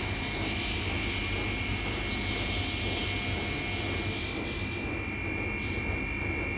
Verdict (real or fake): real